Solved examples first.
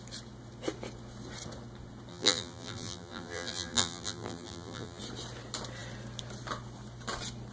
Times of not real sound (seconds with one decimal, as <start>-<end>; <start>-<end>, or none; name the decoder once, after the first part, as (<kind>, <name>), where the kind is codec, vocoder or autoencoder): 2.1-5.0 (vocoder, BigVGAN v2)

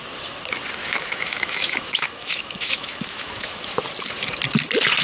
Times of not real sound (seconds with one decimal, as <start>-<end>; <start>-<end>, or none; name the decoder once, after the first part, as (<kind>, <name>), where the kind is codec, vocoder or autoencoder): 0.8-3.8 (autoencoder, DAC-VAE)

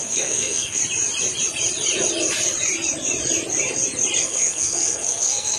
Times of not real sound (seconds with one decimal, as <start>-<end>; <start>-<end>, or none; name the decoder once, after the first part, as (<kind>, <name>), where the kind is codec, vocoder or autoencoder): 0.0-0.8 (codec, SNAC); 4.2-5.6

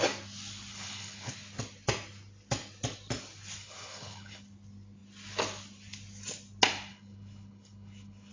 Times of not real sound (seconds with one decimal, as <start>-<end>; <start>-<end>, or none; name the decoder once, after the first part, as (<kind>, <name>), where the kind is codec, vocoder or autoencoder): 0.7-1.3 (codec, HILCodec); 3.6-4.4; 6.9-8.3

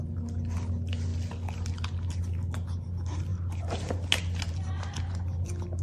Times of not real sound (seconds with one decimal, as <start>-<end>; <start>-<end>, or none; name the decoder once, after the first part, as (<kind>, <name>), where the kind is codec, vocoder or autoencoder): none

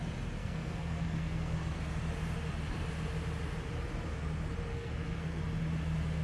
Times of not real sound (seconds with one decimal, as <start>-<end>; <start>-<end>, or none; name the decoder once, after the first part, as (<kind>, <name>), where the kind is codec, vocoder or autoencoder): 0.4-1.8 (codec, SNAC); 4.7-5.4